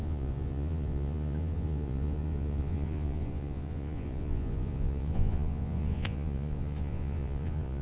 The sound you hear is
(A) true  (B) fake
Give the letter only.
B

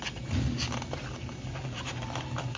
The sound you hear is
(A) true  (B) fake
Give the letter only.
A